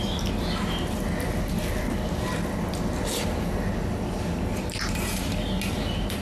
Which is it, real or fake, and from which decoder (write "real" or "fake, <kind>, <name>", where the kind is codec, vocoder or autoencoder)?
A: real